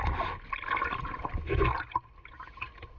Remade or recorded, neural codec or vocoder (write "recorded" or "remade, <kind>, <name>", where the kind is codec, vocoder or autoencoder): recorded